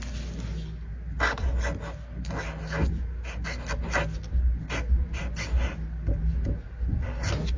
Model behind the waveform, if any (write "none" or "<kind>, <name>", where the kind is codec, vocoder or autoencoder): none